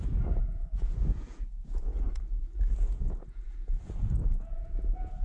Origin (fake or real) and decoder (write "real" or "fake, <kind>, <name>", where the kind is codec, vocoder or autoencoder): fake, vocoder, Vocos